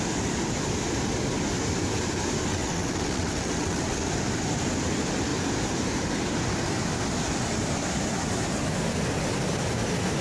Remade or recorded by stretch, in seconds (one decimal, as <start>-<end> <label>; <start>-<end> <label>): 0.0-2.5 recorded; 2.5-4.0 remade; 4.0-10.2 recorded